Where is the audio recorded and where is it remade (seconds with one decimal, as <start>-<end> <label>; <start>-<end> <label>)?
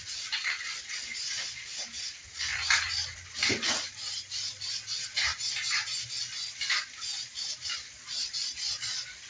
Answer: 0.0-9.3 recorded